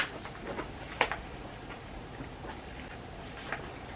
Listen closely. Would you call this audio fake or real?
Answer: real